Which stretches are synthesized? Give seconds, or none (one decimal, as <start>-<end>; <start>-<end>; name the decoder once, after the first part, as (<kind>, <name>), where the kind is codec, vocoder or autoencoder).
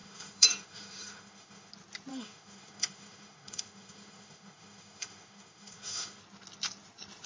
0.0-1.7 (autoencoder, DAC-VAE); 2.1-6.2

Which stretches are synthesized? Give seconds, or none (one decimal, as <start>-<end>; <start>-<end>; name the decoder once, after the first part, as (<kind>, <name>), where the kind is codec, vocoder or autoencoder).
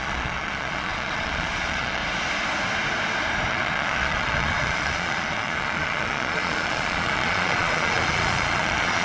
0.0-2.0 (vocoder, Vocos); 3.5-9.0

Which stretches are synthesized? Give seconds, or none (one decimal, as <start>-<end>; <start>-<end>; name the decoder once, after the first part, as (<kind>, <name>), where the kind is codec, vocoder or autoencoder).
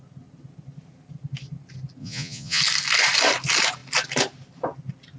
2.0-2.6 (vocoder, Vocos)